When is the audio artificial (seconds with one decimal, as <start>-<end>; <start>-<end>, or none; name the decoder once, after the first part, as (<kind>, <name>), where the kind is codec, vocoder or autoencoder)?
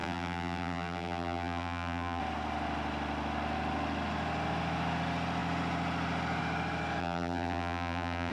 0.0-2.2 (vocoder, BigVGAN v2); 7.0-8.3